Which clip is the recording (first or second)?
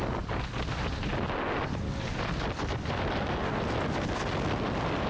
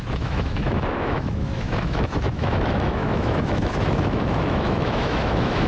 first